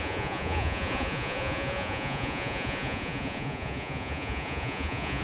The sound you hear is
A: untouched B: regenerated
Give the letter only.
B